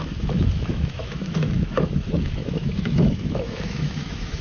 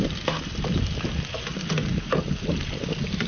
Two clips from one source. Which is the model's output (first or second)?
first